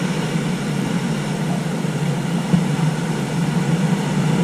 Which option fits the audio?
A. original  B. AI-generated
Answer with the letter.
A